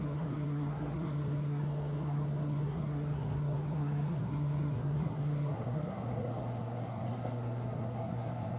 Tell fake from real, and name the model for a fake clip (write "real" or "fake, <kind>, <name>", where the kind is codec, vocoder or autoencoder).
fake, codec, SNAC